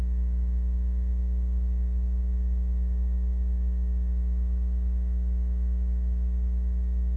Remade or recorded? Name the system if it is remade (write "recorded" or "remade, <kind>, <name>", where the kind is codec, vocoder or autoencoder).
recorded